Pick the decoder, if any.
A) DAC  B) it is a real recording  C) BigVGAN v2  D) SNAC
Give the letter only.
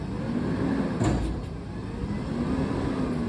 B